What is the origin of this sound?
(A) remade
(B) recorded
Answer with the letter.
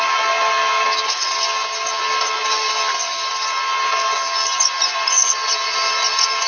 B